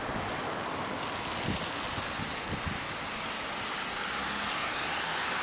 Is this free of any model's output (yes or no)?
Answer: yes